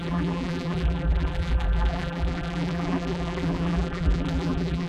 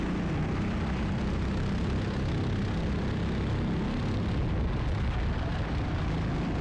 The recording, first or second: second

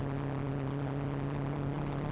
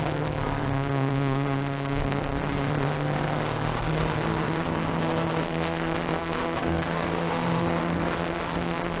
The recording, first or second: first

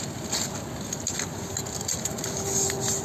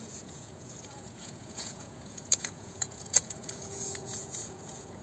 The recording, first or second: first